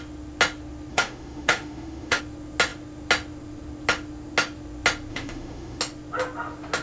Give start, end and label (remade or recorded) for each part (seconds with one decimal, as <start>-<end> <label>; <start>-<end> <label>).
0.0-0.9 recorded; 0.9-2.2 remade; 2.2-5.1 recorded; 5.1-5.8 remade; 5.8-6.8 recorded